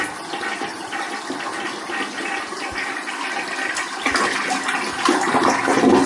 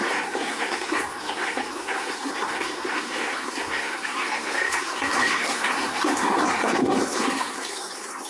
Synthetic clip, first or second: second